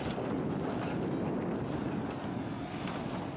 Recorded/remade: recorded